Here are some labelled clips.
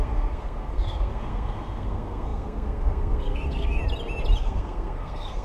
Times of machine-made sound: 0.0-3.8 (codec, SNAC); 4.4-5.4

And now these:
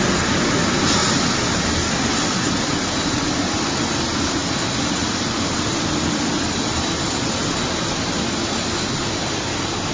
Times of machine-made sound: none

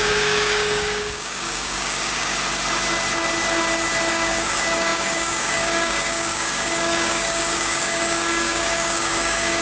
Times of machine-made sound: 0.0-2.3 (codec, DAC); 4.1-9.6

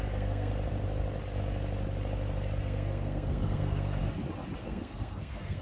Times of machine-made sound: 0.0-0.5 (codec, SNAC); 2.6-4.0; 4.6-5.6

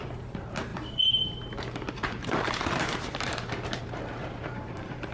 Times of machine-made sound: 0.0-5.1 (vocoder, BigVGAN v2)